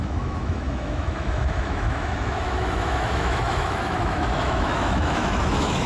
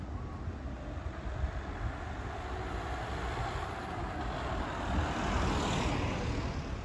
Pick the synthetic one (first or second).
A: first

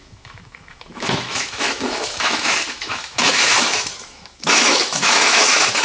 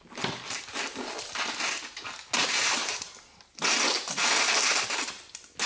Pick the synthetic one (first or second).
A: first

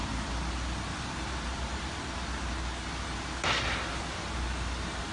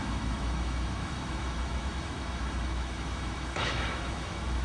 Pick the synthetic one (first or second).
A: second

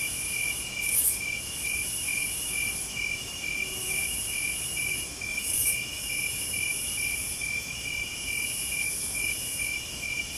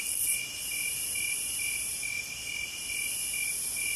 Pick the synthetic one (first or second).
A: first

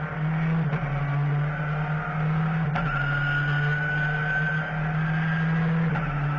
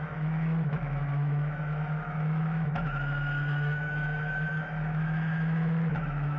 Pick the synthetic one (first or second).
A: second